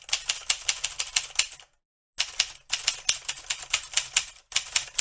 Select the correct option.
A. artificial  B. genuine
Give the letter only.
B